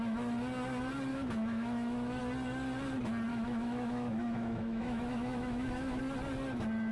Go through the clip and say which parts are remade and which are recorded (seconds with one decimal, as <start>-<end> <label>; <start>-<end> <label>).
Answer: 0.0-1.1 recorded; 1.1-2.2 remade; 2.2-3.3 recorded; 3.3-6.0 remade; 6.0-6.9 recorded